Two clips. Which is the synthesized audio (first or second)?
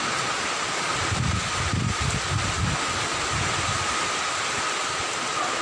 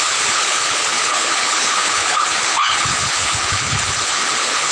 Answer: second